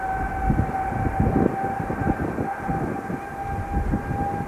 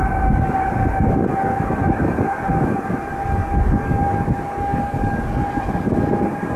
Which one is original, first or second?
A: first